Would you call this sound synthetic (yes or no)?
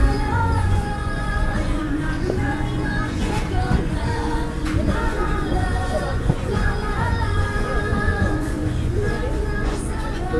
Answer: yes